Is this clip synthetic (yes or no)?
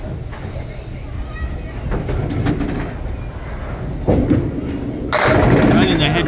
no